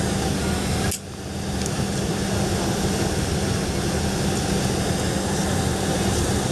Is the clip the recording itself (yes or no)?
yes